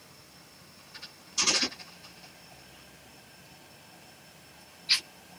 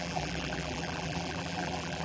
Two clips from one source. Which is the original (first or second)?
first